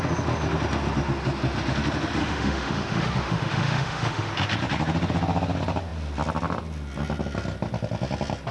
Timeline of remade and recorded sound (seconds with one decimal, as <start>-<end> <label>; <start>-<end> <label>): 0.0-2.2 recorded; 2.2-4.3 remade; 4.3-8.5 recorded